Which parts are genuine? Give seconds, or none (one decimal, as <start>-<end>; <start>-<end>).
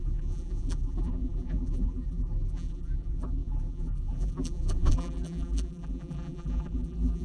none